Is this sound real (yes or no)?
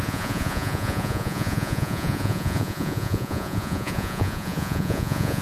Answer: no